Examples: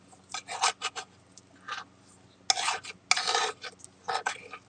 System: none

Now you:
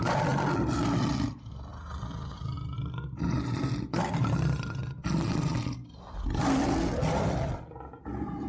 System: none